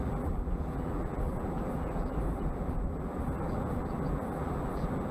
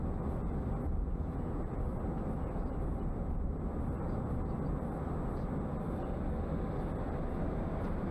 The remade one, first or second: first